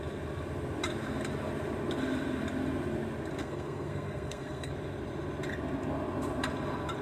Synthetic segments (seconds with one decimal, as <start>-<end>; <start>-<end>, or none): 3.4-4.7